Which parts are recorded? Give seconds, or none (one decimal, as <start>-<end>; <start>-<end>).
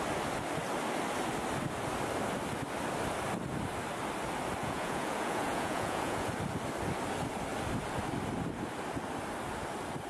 0.0-4.6; 6.3-10.1